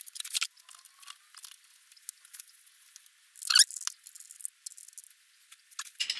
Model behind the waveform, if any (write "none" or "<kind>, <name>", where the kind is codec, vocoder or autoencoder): none